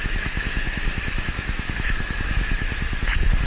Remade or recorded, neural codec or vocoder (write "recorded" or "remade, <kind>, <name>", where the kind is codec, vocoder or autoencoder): remade, autoencoder, DAC-VAE